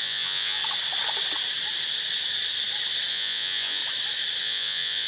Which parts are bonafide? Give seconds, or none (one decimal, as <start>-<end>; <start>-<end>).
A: 0.6-3.1; 3.8-4.4